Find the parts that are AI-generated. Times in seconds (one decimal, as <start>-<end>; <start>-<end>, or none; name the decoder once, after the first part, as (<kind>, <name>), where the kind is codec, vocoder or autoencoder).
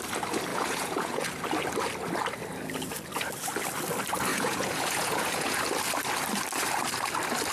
0.5-1.2 (vocoder, Vocos); 4.3-5.6